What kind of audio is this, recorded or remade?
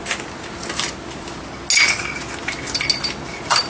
recorded